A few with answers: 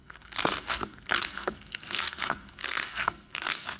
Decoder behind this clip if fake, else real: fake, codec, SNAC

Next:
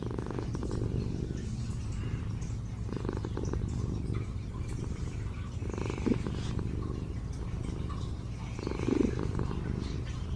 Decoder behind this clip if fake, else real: real